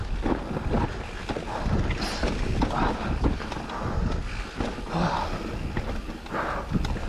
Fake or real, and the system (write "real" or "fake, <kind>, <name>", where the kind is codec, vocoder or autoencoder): real